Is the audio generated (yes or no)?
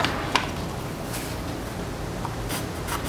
no